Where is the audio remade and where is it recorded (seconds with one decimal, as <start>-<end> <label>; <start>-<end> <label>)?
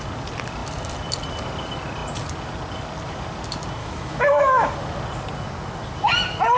0.0-3.8 recorded; 3.8-4.7 remade; 4.7-6.6 recorded